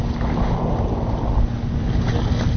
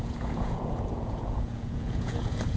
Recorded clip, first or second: first